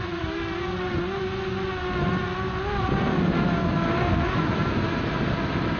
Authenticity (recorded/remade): recorded